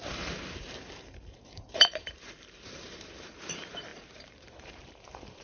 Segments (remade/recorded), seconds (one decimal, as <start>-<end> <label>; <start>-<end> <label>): 0.0-5.4 remade